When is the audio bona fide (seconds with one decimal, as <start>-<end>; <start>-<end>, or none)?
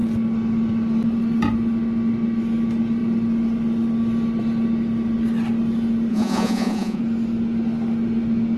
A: 0.0-6.1; 7.0-8.6